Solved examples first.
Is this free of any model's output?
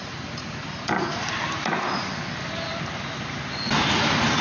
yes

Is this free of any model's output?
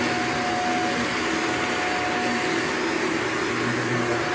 yes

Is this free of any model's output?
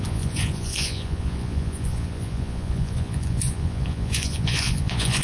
no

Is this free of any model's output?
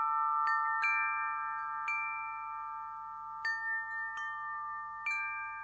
yes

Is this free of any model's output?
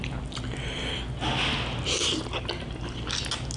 yes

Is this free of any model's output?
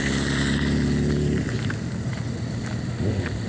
yes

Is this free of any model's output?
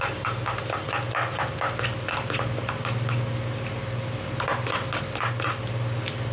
yes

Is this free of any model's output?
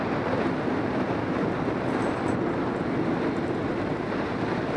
yes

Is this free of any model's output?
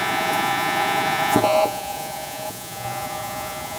no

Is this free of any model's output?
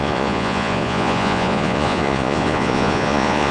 no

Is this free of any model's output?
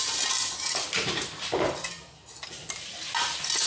yes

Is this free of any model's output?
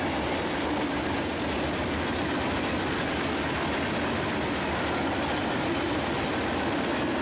yes